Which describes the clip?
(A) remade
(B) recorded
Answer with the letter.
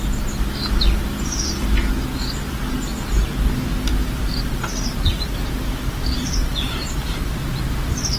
B